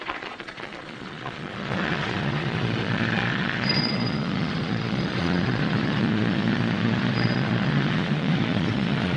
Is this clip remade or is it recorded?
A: remade